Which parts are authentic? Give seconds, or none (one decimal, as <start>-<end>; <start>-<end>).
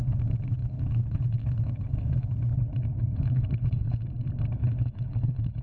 0.0-0.6; 4.0-4.6